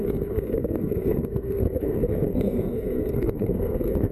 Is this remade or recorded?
remade